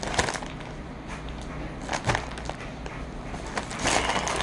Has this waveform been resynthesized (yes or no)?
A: no